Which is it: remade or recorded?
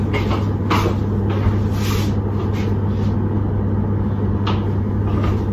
recorded